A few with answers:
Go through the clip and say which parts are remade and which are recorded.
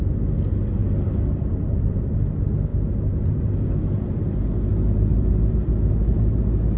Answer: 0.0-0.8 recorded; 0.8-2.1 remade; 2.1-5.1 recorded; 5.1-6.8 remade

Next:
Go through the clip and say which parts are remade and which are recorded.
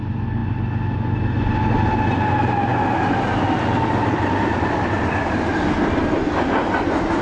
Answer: 0.0-7.2 recorded